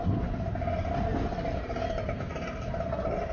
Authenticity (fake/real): real